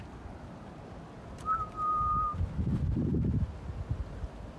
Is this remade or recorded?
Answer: recorded